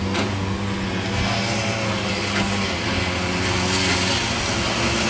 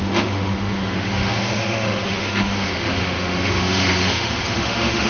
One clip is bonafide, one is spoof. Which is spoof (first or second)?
second